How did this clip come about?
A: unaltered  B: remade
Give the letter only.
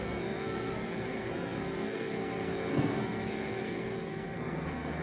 B